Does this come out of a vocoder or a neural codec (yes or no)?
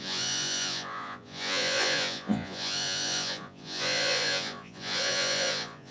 yes